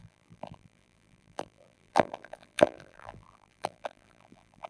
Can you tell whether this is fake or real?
fake